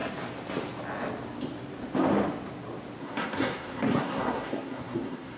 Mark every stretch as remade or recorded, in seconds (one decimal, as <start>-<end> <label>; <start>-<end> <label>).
0.0-3.0 recorded; 3.0-5.4 remade